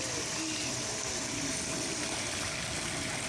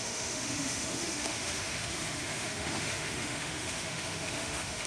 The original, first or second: first